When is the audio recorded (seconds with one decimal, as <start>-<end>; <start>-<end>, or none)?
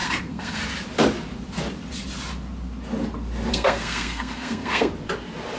0.6-3.5; 4.9-5.6